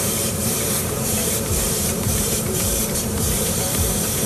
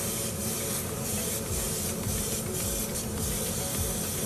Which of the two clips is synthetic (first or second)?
first